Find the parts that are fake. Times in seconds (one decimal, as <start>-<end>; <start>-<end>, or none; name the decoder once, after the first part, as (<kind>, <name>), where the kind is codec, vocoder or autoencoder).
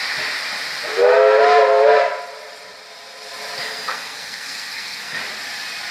3.6-5.2 (codec, SNAC)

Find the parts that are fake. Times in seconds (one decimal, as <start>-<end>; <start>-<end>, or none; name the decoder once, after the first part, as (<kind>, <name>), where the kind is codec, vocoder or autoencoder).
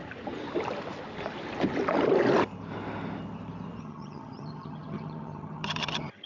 3.8-6.3 (vocoder, HiFi-GAN)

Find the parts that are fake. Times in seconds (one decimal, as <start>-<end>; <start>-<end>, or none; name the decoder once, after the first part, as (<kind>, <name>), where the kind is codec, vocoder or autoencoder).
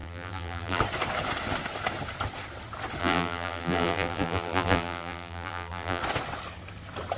0.0-0.8 (vocoder, BigVGAN v2); 3.0-6.0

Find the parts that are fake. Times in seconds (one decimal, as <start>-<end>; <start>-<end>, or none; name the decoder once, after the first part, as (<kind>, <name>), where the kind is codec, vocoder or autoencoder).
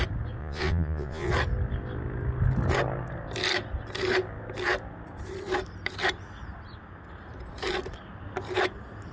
0.4-1.3 (vocoder, Vocos)